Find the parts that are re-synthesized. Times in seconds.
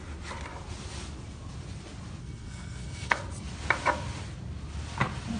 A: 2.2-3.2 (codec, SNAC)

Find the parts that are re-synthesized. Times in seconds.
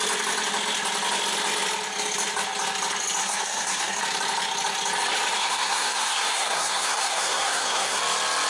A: 3.2-4.0 (codec, SNAC); 5.4-8.0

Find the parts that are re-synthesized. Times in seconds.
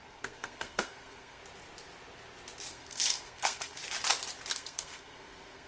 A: 0.0-1.4 (codec, SNAC); 2.7-3.8; 4.5-5.7